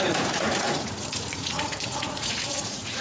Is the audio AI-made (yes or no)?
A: yes